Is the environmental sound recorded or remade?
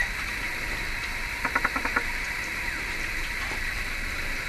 recorded